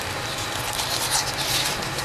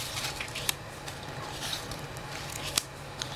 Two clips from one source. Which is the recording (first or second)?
first